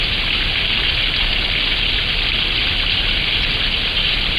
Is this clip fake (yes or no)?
no